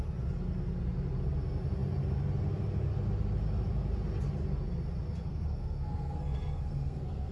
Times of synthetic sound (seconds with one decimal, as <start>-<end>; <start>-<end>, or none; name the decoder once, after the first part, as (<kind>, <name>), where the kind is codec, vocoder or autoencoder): 5.3-7.3 (codec, SNAC)